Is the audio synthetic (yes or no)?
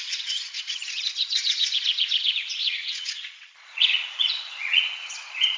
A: yes